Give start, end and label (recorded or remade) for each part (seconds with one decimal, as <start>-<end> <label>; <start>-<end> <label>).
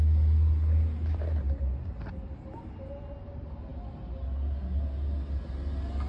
0.0-6.1 recorded